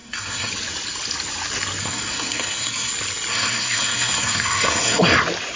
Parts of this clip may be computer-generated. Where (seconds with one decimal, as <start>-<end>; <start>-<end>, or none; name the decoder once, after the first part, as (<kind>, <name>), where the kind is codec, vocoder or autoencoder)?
0.0-0.5 (codec, SNAC); 1.8-2.9; 3.3-5.0